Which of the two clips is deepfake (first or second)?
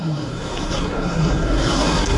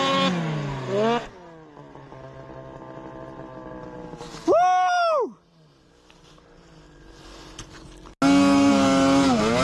first